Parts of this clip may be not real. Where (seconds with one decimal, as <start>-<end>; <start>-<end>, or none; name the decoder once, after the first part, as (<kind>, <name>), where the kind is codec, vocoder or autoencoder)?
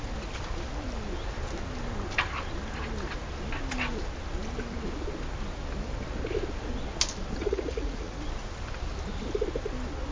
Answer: 7.4-8.2 (vocoder, Vocos)